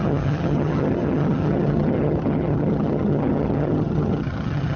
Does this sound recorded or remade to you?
remade